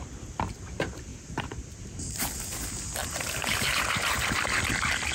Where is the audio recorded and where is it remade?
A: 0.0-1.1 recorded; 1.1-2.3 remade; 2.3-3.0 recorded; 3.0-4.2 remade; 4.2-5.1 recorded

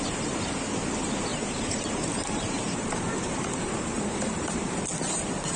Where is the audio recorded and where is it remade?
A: 0.0-1.3 recorded; 1.3-4.7 remade; 4.7-5.6 recorded

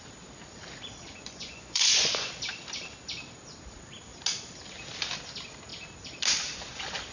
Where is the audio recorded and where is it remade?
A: 0.0-1.1 recorded; 1.1-2.3 remade; 2.3-7.1 recorded

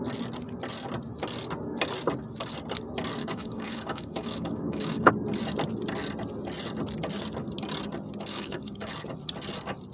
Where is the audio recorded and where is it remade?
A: 0.0-3.2 recorded; 3.2-5.1 remade; 5.1-8.3 recorded; 8.3-8.9 remade; 8.9-9.9 recorded

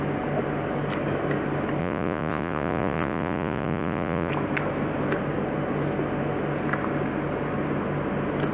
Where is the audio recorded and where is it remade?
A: 0.0-1.8 recorded; 1.8-4.3 remade; 4.3-8.5 recorded

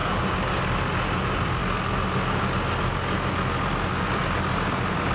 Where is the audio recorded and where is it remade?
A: 0.0-0.6 remade; 0.6-5.1 recorded